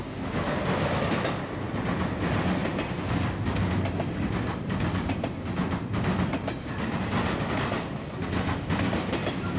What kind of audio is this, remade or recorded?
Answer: recorded